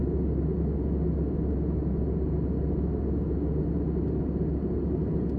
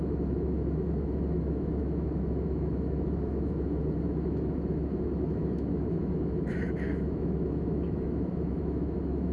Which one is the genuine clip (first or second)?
first